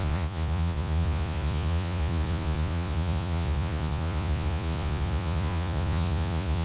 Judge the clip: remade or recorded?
remade